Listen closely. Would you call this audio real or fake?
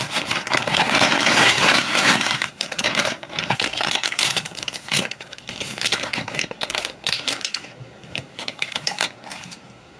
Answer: fake